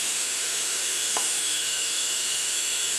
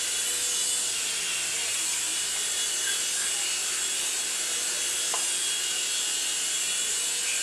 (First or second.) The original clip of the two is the second